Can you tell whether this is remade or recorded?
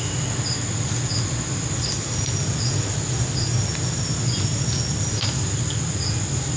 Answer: recorded